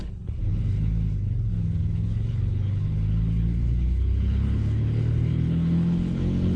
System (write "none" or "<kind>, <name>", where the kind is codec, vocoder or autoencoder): codec, HILCodec